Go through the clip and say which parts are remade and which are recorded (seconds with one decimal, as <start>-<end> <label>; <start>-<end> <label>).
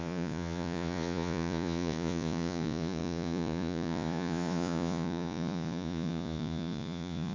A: 0.0-7.3 remade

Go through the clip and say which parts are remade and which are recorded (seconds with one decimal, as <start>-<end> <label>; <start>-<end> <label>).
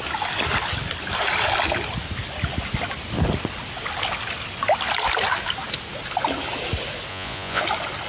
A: 0.0-7.1 recorded; 7.1-7.6 remade; 7.6-8.1 recorded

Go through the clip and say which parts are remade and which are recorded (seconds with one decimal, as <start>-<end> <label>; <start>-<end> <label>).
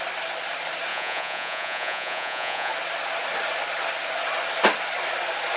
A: 0.0-0.9 recorded; 0.9-2.7 remade; 2.7-5.6 recorded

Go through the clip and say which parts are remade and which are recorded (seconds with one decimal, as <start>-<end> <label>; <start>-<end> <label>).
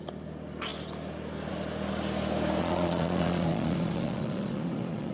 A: 0.0-2.6 recorded; 2.6-5.1 remade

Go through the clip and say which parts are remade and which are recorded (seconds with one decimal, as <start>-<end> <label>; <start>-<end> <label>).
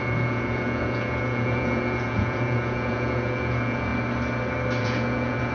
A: 0.0-3.9 remade; 3.9-4.8 recorded; 4.8-5.5 remade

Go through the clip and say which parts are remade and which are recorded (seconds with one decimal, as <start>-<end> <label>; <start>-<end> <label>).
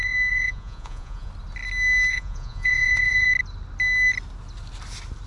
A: 0.0-1.3 remade; 1.3-2.1 recorded; 2.1-3.3 remade; 3.3-5.3 recorded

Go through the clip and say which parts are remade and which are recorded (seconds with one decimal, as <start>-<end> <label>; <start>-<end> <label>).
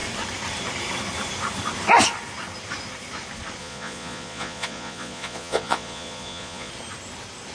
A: 0.0-3.6 recorded; 3.6-6.7 remade; 6.7-7.5 recorded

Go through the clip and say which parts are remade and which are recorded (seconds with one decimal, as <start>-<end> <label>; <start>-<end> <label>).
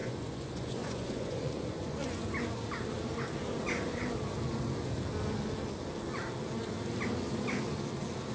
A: 0.0-2.3 remade; 2.3-8.3 recorded